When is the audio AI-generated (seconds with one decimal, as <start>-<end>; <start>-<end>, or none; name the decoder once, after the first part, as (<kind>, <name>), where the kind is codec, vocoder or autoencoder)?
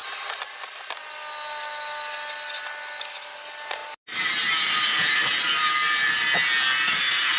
none